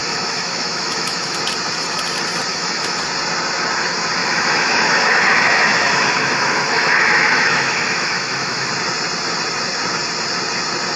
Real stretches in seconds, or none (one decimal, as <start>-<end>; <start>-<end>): 1.4-2.5; 3.0-4.2; 8.7-11.0